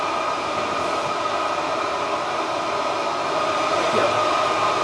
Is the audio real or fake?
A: real